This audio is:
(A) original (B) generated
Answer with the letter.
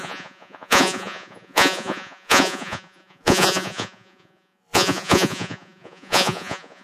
B